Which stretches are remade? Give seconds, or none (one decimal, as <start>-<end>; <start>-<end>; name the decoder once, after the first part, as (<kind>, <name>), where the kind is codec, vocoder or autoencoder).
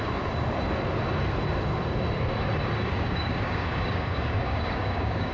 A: 2.9-5.3 (codec, DAC)